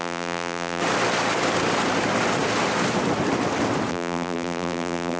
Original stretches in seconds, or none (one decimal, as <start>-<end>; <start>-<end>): 0.8-3.9